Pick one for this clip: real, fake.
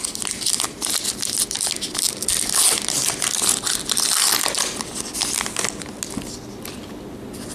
real